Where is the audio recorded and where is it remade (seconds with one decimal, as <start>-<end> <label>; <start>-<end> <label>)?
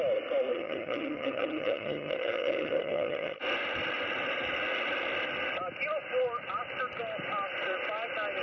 0.0-0.5 recorded; 0.5-3.4 remade; 3.4-8.4 recorded